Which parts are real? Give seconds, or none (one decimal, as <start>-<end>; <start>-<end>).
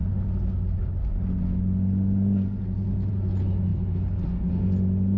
0.0-5.2